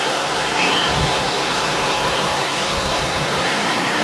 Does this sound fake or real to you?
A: fake